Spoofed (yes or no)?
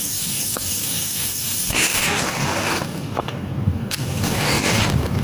yes